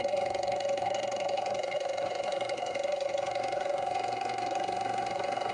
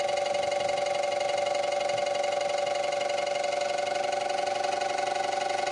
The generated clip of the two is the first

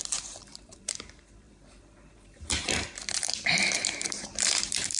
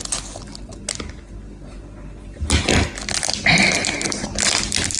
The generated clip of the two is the first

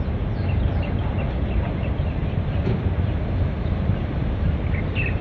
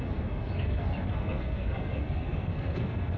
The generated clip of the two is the second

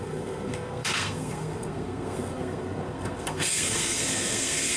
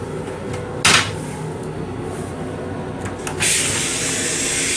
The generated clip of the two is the first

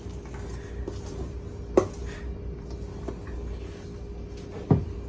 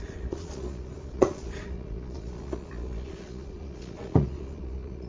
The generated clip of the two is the second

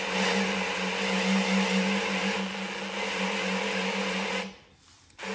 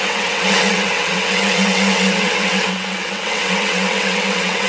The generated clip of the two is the second